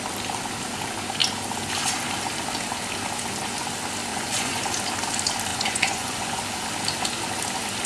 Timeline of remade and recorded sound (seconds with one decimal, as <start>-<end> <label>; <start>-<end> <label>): 0.0-4.1 recorded; 4.1-4.6 remade; 4.6-5.5 recorded; 5.5-6.4 remade; 6.4-7.9 recorded